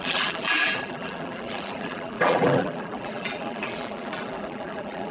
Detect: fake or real fake